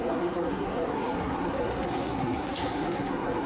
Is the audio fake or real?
fake